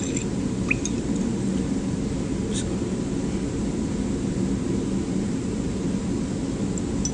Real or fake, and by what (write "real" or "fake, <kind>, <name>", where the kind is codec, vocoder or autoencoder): real